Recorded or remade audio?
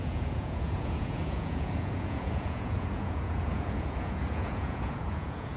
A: remade